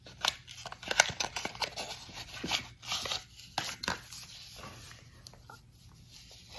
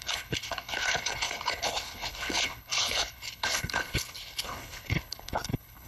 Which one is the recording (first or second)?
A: first